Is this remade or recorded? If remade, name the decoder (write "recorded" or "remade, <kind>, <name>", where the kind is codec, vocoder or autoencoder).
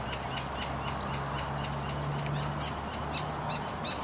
recorded